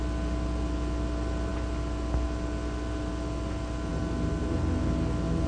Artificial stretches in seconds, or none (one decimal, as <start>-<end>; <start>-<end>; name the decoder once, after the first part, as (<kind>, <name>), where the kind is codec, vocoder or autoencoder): none